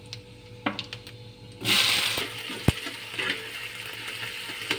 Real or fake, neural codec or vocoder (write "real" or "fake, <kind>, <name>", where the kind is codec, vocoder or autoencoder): real